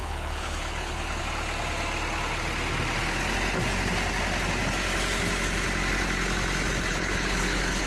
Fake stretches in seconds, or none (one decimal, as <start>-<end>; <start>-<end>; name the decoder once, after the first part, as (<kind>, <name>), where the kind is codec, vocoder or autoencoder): 0.0-1.2 (codec, HILCodec); 6.9-7.9